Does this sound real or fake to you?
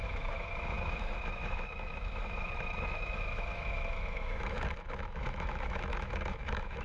fake